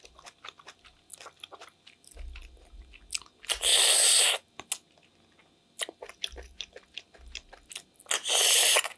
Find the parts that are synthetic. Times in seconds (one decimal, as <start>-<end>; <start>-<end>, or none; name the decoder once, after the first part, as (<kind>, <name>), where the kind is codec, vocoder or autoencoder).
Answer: none